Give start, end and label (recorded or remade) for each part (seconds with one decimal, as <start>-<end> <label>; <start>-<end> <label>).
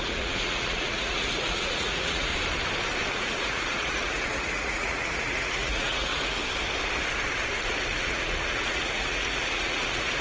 0.0-2.3 remade; 2.3-3.1 recorded; 3.1-6.4 remade; 6.4-8.0 recorded; 8.0-10.2 remade